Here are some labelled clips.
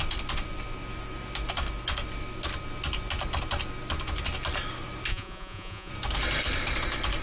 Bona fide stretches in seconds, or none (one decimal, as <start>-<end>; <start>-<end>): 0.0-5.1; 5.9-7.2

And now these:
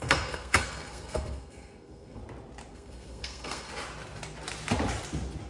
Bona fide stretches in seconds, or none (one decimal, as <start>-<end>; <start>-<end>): 2.2-2.7; 3.7-5.5

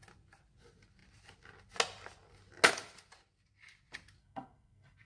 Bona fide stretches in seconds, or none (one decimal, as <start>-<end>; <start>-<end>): 0.0-4.2